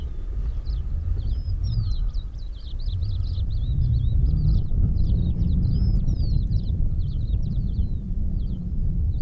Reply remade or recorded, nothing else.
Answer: recorded